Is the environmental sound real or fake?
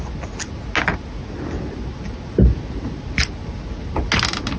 real